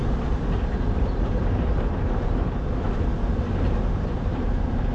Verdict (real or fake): fake